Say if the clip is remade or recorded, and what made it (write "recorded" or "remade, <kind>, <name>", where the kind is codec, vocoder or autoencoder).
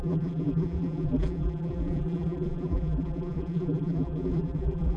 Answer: remade, vocoder, BigVGAN v2